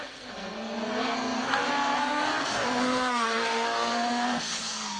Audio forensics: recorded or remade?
remade